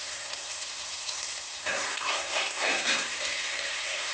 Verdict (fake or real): fake